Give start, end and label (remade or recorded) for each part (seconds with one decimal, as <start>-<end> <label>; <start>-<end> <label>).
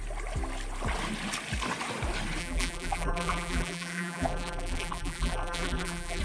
0.0-2.4 recorded; 2.4-6.2 remade